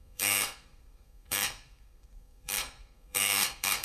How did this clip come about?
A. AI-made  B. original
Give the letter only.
A